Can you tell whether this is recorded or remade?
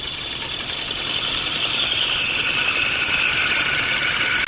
recorded